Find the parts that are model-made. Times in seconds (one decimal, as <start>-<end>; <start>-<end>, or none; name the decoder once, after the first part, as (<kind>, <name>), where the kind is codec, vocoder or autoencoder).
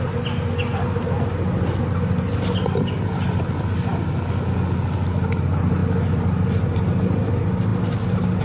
none